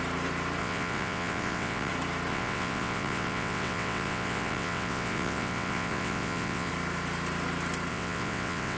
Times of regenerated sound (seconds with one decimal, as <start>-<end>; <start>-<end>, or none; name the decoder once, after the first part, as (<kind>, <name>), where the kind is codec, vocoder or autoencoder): 0.6-1.9 (vocoder, WaveNeXt); 2.3-6.7; 7.9-8.8